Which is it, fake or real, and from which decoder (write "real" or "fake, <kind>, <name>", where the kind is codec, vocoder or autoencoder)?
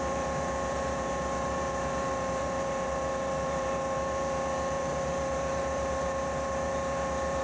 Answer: fake, vocoder, BigVGAN v2